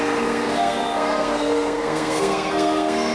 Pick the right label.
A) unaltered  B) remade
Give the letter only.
B